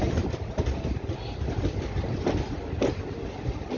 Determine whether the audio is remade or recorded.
recorded